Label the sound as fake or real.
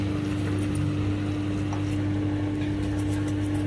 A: real